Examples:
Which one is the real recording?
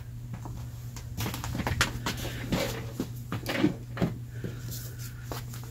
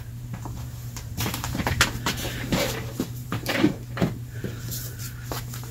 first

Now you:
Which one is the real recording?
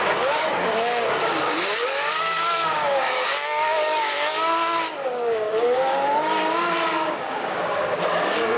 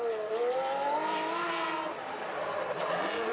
second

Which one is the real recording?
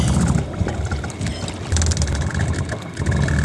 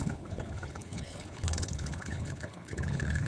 first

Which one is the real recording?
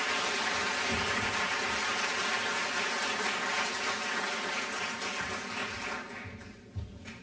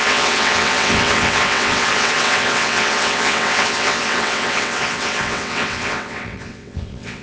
first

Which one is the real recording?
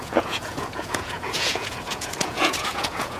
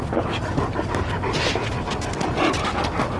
second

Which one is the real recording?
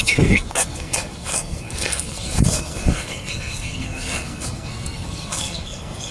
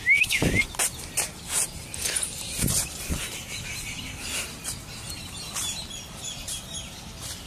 second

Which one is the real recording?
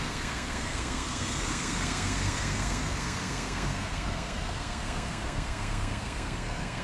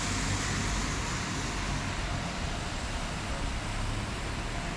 second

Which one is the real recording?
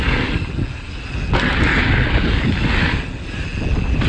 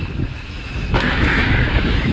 first